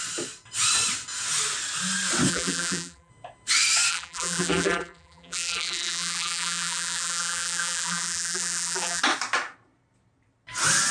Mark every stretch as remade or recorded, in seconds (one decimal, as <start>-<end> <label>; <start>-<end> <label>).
0.0-2.3 recorded; 2.3-3.1 remade; 3.1-3.9 recorded; 3.9-9.0 remade; 9.0-10.9 recorded